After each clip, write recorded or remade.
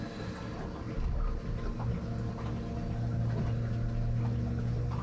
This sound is recorded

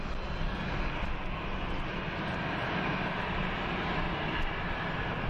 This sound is recorded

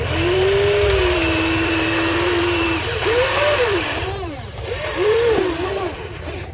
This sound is remade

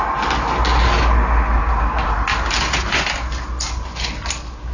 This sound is recorded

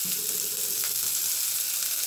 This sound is recorded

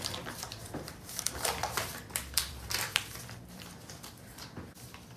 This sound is remade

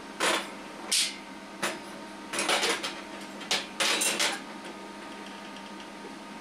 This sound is recorded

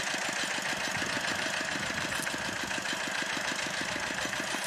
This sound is recorded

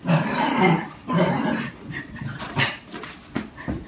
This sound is remade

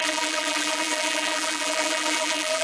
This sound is remade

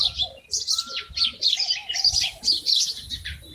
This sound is recorded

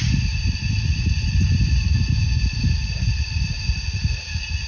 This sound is recorded